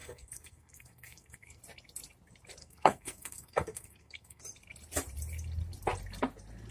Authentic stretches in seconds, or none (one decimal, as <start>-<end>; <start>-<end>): 1.6-2.6; 4.4-6.7